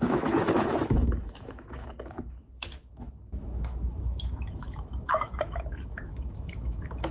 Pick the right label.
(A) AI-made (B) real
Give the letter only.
A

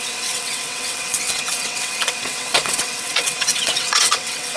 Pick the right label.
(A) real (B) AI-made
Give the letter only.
B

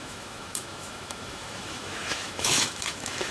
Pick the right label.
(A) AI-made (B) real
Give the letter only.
A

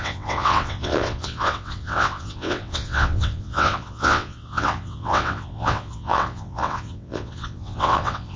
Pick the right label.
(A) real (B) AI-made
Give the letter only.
B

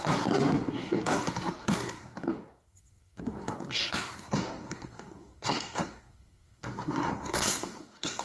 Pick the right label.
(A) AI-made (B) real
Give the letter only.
A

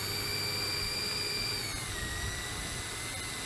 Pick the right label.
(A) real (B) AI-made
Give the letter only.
A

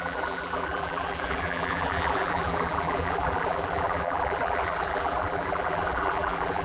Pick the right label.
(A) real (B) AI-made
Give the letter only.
B